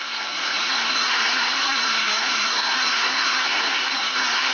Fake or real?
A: fake